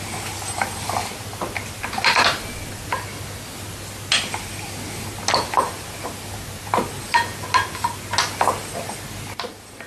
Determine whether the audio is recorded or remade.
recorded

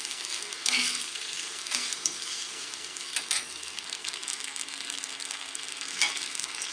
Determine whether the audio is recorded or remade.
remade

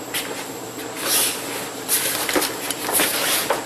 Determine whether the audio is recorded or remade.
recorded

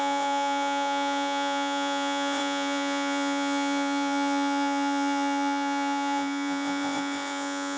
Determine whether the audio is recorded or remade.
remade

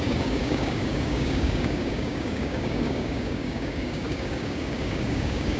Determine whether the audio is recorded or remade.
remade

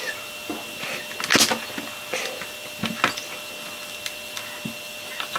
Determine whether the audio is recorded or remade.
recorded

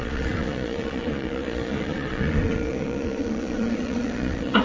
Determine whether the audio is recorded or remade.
remade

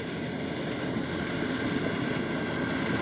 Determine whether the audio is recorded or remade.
recorded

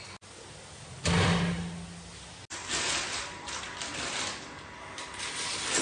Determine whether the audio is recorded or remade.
recorded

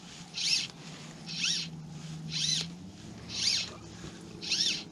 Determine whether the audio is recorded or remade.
recorded